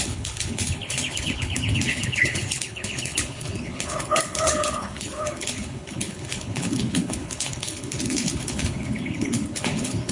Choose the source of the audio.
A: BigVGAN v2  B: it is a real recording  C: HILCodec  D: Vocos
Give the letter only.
C